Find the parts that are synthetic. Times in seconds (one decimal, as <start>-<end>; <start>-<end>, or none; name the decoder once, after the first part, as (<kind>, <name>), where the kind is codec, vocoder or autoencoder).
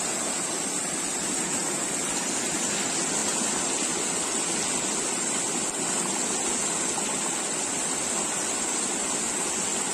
none